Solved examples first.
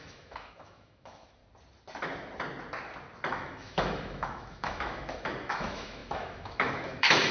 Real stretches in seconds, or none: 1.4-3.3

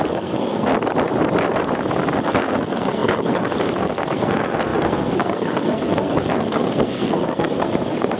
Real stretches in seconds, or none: 0.7-2.2

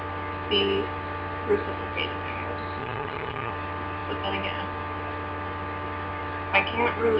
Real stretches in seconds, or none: 0.0-2.8; 3.5-7.2

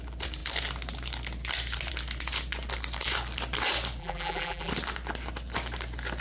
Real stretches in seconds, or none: 0.0-4.0; 4.7-6.2

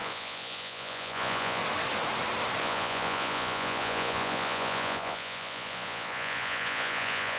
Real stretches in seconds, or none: 1.6-2.6